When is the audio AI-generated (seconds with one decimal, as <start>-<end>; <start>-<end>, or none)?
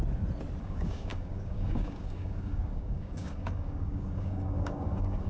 0.6-5.3